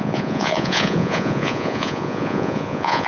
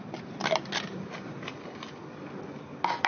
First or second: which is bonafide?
second